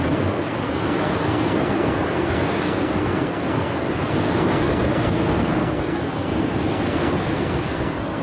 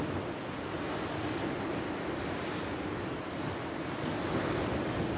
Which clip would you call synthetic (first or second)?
first